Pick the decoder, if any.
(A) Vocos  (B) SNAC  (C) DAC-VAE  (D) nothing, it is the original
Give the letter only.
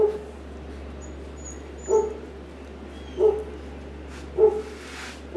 D